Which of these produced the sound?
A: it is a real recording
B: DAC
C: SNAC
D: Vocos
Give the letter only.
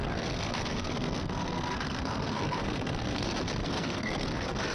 C